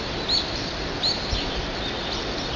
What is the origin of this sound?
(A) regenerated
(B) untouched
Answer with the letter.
B